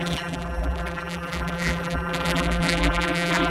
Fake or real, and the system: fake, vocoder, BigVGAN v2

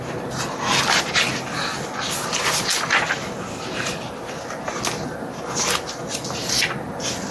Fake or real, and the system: real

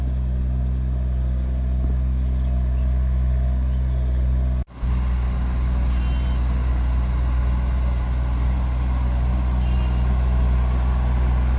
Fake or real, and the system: real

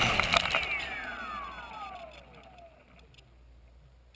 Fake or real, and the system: real